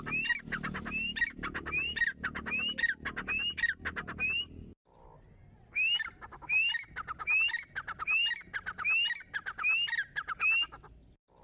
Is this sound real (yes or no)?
yes